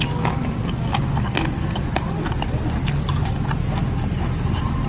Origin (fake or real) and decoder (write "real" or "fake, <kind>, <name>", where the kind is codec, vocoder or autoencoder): real